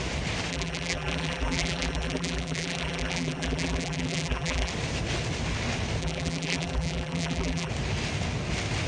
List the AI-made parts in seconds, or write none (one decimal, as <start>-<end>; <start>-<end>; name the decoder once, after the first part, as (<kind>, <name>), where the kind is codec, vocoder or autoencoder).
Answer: 0.5-4.7 (vocoder, BigVGAN v2); 6.0-7.7